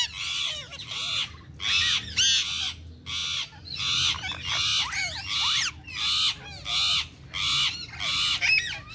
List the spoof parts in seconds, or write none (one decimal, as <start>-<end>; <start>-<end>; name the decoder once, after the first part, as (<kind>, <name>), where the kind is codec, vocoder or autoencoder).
none